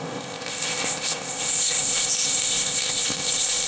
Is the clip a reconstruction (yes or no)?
yes